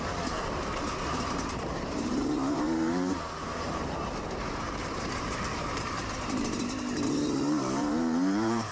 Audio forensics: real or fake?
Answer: fake